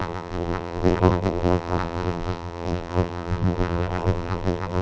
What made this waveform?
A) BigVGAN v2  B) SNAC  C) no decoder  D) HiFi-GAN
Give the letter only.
A